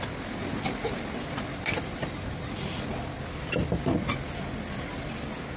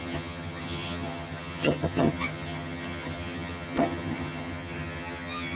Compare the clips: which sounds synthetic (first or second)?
second